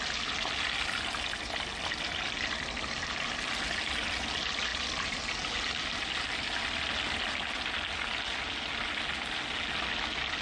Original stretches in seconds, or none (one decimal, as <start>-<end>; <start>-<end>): 0.0-10.4